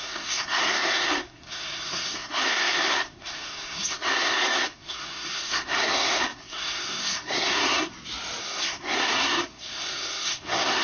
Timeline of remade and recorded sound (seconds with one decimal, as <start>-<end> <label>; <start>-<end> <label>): 0.0-7.9 remade; 7.9-8.4 recorded; 8.4-10.8 remade